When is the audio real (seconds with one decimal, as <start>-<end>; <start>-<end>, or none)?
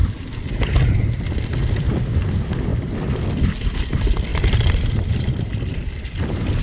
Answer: 0.0-1.6; 2.2-2.7; 3.2-4.3